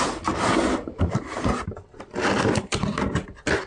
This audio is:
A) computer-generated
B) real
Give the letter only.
B